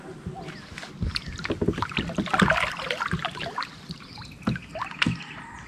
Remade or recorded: recorded